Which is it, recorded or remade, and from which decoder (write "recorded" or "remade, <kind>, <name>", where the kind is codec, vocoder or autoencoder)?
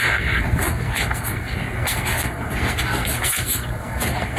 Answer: remade, codec, SNAC